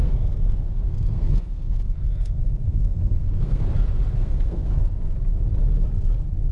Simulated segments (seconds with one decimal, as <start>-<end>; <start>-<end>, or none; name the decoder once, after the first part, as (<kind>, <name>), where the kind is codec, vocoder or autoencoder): 0.0-3.6 (codec, SNAC); 4.2-4.8